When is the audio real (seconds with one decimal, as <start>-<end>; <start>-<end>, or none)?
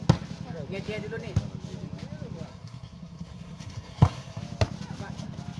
0.0-2.5; 4.4-5.6